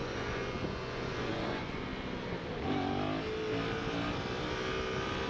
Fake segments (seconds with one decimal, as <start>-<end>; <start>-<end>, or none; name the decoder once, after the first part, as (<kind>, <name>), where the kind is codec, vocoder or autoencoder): 0.0-1.9 (vocoder, Vocos)